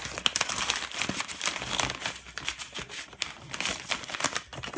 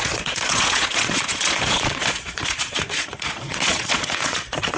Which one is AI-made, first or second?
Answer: second